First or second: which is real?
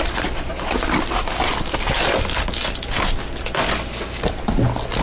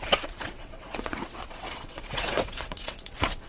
first